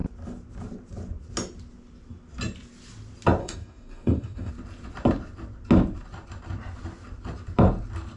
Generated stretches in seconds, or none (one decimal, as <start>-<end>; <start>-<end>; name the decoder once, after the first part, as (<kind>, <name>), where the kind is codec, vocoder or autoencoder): 3.4-4.5 (codec, DAC)